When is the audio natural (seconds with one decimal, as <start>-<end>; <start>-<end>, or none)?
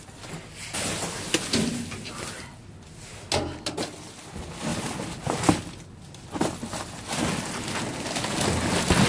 0.0-9.1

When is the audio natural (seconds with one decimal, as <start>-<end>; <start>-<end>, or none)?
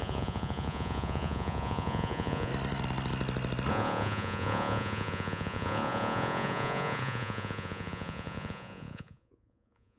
2.5-3.7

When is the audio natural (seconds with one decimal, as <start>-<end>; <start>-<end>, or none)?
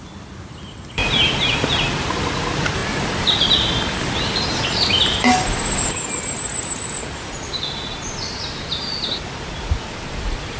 0.0-10.6